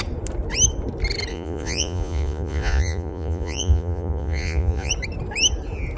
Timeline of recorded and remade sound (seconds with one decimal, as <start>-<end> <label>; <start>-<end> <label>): 0.0-1.3 recorded; 1.3-4.9 remade; 4.9-6.0 recorded